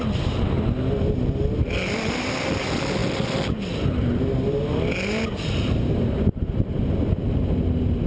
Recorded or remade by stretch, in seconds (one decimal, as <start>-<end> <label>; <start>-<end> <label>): 0.0-8.1 recorded